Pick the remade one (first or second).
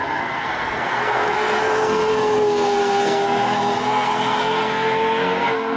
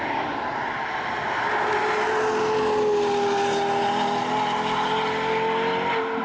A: first